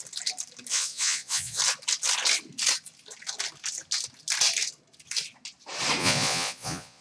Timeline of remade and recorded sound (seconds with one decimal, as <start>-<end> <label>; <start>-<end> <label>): 0.0-0.7 recorded; 0.7-1.6 remade; 1.6-6.0 recorded; 6.0-7.0 remade